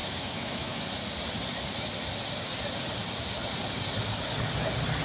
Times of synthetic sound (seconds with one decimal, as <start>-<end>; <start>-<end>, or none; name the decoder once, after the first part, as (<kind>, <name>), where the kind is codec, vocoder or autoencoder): 0.0-0.8 (autoencoder, DAC-VAE)